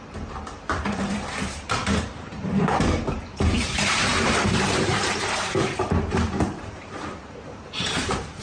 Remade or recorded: remade